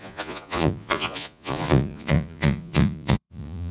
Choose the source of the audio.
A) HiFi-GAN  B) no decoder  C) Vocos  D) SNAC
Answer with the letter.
C